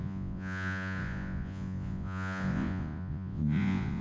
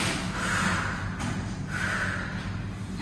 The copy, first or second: first